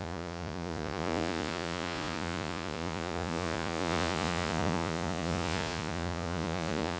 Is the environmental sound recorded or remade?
remade